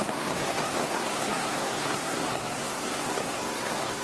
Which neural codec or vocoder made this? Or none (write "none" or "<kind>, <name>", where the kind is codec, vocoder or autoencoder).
codec, SNAC